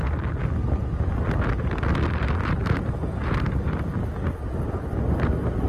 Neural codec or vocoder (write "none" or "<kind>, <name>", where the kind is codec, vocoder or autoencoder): none